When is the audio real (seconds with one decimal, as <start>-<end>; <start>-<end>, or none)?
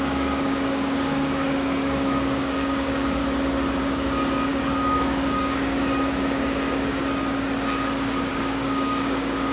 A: 3.2-3.8; 7.0-8.3